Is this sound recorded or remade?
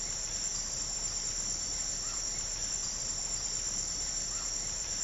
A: remade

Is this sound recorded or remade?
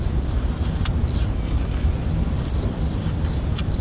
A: recorded